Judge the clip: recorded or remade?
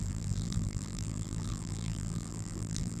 remade